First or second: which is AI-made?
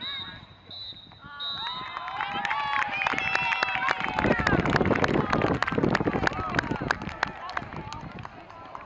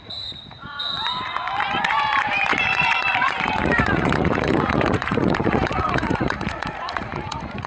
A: second